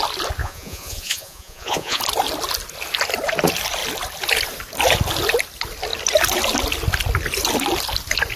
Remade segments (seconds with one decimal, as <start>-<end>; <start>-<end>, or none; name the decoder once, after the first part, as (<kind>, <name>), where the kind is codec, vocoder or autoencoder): 0.4-2.0 (vocoder, Vocos)